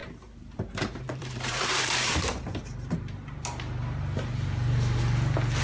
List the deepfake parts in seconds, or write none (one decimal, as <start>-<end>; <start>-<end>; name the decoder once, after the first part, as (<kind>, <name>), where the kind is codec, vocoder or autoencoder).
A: 0.0-3.4 (vocoder, BigVGAN v2)